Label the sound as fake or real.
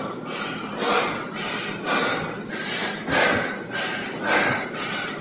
real